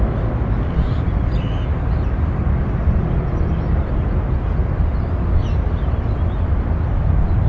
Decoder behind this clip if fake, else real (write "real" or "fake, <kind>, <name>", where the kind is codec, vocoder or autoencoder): real